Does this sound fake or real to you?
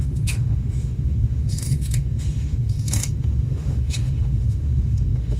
fake